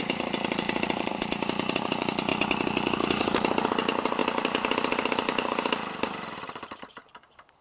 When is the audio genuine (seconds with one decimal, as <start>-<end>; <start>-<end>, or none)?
2.3-3.2